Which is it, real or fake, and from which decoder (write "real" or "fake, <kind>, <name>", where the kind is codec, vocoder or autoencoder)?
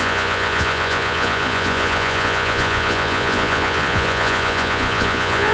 fake, vocoder, Vocos